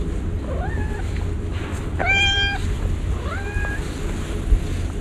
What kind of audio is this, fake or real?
real